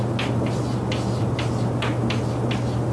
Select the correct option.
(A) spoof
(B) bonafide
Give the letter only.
B